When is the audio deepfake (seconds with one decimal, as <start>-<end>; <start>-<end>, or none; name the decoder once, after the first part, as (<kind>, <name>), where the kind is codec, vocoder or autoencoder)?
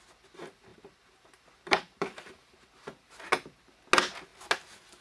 0.7-3.1 (vocoder, BigVGAN v2)